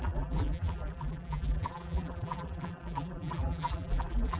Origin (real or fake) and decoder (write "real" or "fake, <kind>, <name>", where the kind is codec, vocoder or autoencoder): fake, vocoder, BigVGAN v2